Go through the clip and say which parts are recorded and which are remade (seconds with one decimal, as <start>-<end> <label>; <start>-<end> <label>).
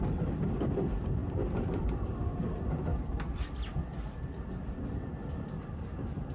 0.0-6.3 recorded